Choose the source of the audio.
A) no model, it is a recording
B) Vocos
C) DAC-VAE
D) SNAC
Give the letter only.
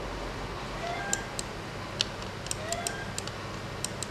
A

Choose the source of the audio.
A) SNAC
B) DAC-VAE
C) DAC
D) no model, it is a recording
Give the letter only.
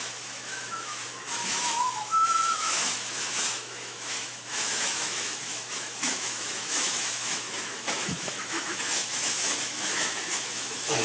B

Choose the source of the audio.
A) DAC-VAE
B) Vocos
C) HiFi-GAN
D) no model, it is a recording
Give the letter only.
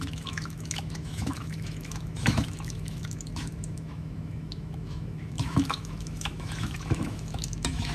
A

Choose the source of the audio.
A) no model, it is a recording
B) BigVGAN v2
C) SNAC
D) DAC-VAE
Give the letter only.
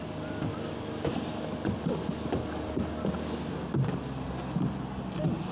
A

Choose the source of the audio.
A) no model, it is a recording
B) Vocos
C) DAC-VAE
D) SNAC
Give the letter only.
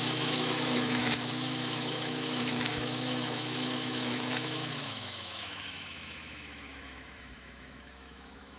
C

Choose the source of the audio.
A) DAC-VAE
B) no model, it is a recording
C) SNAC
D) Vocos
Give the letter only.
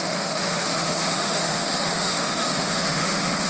A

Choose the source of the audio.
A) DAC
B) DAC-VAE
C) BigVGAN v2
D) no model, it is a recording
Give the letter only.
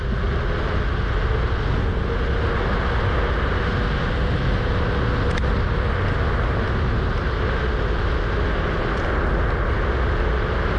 D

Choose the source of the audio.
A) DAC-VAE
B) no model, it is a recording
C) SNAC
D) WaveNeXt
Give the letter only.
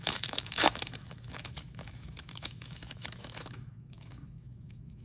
A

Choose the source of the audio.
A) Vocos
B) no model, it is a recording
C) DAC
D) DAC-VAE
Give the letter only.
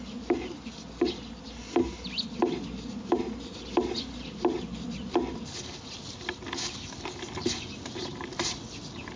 B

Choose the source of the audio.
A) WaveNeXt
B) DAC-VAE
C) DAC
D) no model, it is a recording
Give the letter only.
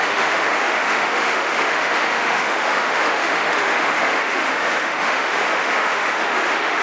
B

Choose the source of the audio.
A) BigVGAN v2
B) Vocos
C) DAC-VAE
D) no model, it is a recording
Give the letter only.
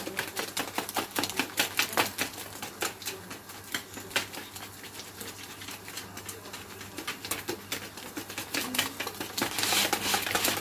D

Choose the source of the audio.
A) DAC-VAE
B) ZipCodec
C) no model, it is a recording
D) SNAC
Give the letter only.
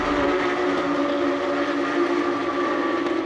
C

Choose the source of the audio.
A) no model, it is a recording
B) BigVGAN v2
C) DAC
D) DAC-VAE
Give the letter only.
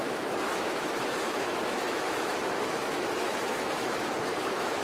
D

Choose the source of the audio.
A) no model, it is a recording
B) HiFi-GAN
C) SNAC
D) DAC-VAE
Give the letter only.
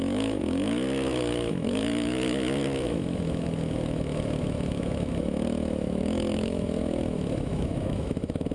D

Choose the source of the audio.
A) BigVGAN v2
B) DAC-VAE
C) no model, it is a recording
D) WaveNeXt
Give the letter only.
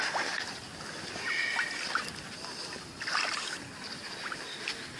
C